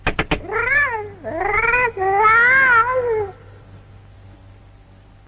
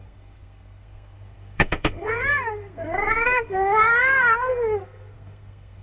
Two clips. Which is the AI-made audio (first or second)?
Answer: second